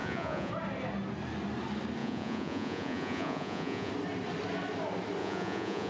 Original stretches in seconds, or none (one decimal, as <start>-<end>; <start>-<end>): 0.5-2.0; 3.9-5.2